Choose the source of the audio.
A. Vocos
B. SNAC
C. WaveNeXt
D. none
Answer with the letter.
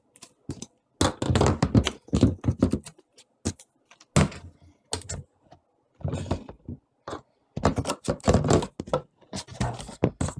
D